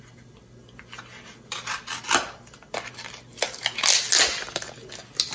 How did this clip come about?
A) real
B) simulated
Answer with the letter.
A